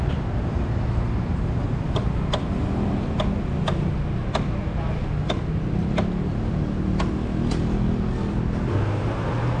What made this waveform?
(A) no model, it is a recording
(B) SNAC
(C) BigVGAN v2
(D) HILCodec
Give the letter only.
A